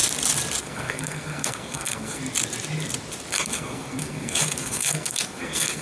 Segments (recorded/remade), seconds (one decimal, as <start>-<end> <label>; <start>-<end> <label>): 0.0-0.6 recorded; 0.6-2.2 remade; 2.2-3.3 recorded; 3.3-5.8 remade